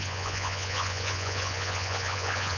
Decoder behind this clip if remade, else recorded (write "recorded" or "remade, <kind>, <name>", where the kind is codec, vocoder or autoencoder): remade, vocoder, Vocos